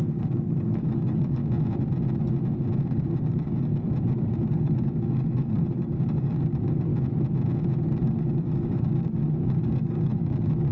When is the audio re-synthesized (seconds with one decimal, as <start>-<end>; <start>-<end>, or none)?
0.0-1.4; 2.9-6.9; 7.8-10.7